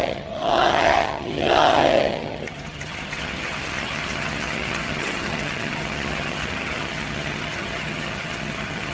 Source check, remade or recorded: remade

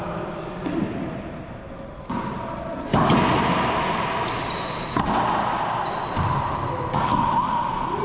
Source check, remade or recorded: recorded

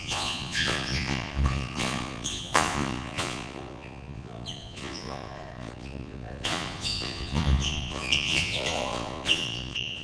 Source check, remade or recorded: remade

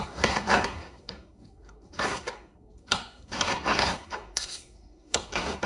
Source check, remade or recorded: remade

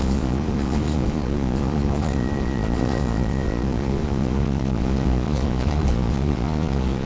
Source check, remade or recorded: remade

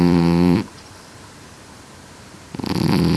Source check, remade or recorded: remade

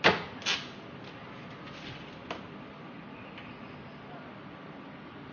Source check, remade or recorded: recorded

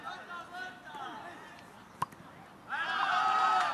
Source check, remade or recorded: recorded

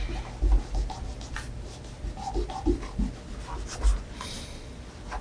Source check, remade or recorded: recorded